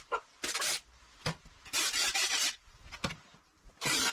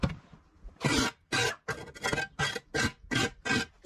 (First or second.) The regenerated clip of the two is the first